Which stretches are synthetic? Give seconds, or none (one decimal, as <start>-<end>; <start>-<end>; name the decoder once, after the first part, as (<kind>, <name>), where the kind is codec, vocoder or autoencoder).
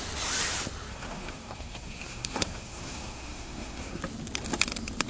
0.9-4.0 (codec, SNAC)